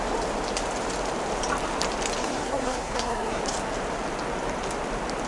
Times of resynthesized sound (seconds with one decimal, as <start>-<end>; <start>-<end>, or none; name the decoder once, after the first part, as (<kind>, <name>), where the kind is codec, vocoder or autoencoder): 2.2-3.4 (codec, SNAC)